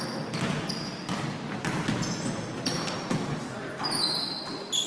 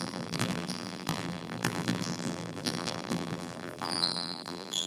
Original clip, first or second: first